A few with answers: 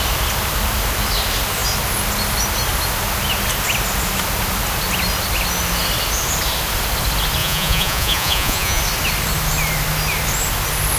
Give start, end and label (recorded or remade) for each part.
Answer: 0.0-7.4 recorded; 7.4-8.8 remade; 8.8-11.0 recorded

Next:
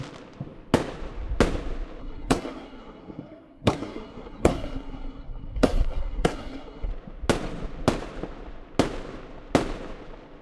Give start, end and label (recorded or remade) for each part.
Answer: 0.0-2.0 recorded; 2.0-6.9 remade; 6.9-10.4 recorded

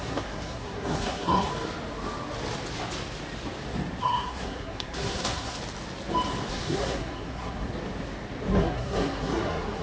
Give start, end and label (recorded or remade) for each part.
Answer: 0.0-1.5 remade; 1.5-4.0 recorded; 4.0-5.6 remade; 5.6-6.5 recorded; 6.5-7.7 remade; 7.7-8.6 recorded; 8.6-9.8 remade

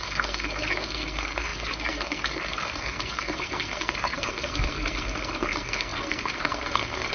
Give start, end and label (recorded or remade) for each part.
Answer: 0.0-7.1 remade

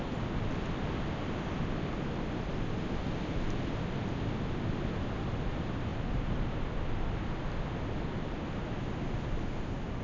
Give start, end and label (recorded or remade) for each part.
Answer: 0.0-10.0 recorded

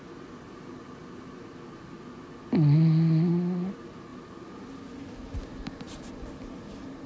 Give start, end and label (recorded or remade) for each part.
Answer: 0.0-7.1 recorded